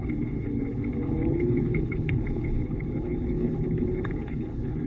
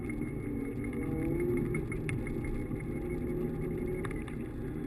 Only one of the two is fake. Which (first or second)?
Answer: first